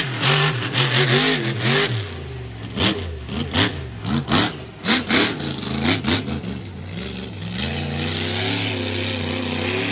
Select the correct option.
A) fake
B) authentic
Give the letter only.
B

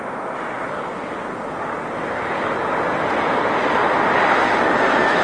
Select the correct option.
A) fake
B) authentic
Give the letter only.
B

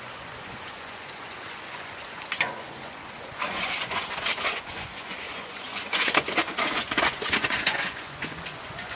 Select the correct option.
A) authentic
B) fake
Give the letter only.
B